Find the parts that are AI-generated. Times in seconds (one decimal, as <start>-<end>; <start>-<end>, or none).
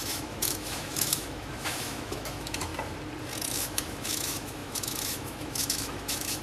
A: 0.0-2.7; 3.5-6.4